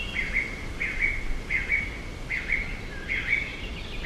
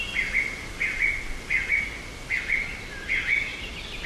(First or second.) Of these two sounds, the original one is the second